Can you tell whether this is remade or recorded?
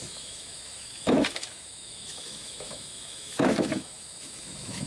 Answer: remade